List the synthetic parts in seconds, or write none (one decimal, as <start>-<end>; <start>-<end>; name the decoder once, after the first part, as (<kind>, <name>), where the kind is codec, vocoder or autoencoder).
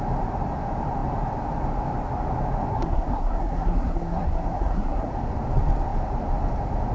2.7-5.1 (codec, SNAC)